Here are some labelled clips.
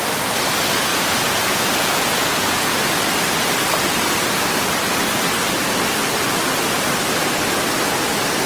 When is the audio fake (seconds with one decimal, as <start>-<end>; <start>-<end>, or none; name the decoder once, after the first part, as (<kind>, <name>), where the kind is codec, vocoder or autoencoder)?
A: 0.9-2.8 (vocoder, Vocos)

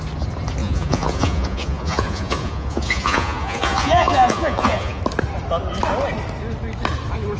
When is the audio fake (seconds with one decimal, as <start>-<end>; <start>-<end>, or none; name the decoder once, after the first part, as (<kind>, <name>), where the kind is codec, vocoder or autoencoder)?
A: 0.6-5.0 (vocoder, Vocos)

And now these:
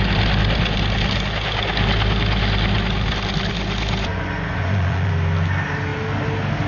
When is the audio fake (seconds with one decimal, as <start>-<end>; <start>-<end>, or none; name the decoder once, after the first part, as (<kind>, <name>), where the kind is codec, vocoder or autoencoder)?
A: 4.1-5.1 (vocoder, Vocos)